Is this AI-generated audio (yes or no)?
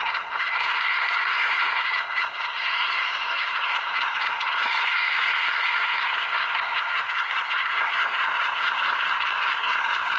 yes